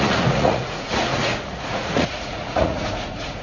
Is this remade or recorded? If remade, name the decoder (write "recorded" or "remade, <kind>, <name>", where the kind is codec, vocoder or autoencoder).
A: remade, vocoder, Vocos